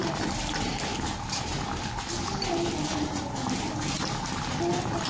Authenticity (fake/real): real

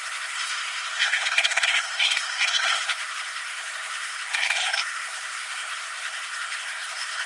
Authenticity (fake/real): fake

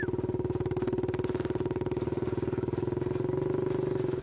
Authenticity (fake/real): real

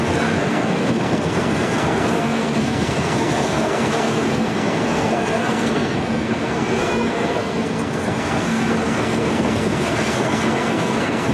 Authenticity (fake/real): fake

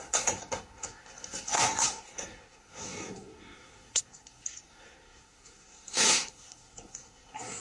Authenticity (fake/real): fake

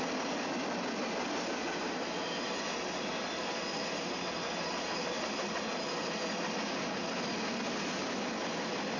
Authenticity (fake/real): real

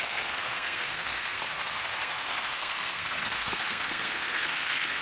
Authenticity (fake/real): fake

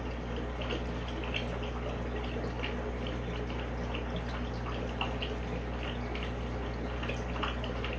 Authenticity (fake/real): real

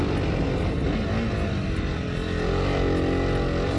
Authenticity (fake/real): real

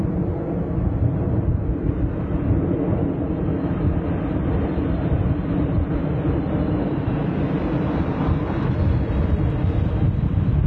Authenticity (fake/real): real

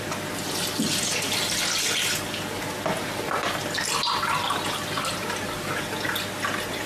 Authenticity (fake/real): real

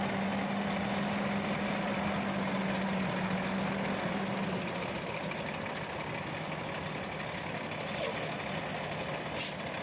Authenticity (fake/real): real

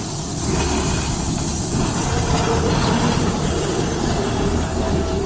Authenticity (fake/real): real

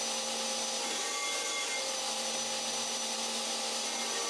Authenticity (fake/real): real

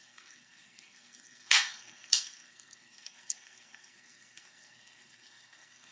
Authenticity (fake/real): fake